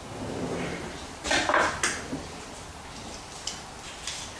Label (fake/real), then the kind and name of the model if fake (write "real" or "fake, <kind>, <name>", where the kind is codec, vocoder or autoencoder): real